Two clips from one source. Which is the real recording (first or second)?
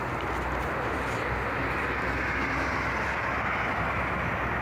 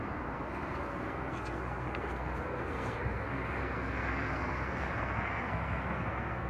first